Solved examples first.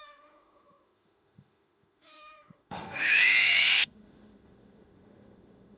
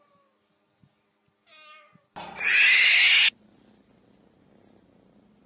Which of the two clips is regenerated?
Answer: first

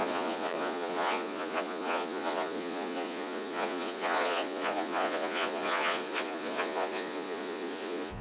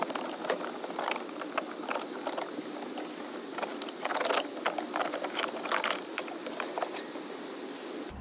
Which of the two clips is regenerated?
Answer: first